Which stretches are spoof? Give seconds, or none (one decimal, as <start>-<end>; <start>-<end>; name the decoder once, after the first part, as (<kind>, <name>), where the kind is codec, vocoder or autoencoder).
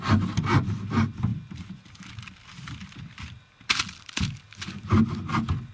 1.3-4.1 (vocoder, BigVGAN v2)